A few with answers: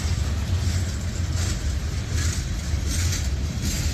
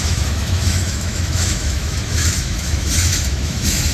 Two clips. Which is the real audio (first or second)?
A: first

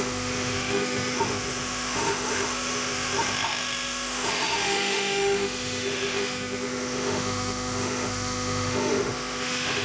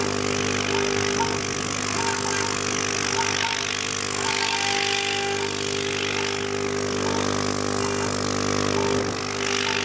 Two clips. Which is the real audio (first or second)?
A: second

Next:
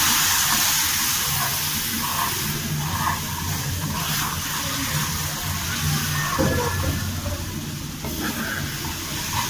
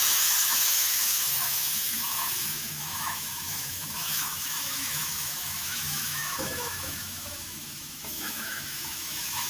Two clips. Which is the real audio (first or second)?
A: first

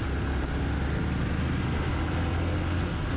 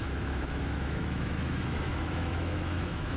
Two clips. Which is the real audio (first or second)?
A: first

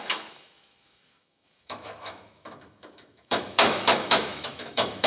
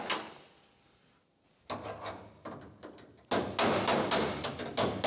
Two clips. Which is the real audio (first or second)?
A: second